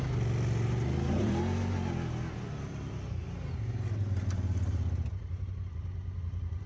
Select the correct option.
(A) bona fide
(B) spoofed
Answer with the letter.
A